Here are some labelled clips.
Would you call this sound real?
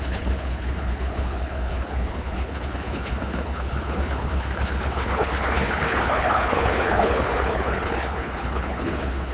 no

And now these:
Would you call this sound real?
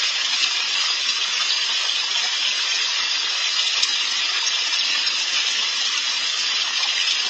yes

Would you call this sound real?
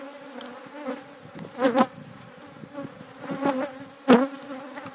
yes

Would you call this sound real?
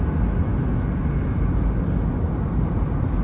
yes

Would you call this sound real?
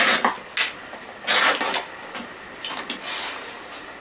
yes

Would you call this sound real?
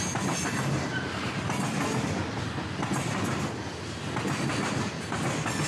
yes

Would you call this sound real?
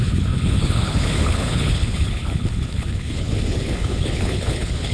no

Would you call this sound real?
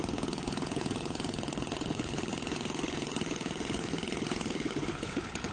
no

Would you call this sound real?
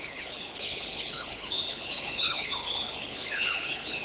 no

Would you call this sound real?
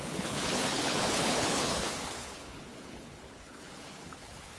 no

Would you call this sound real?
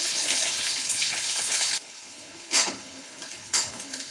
no